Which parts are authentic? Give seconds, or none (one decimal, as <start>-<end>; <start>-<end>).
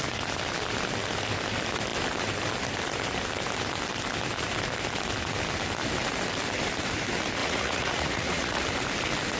0.0-7.4; 8.6-9.4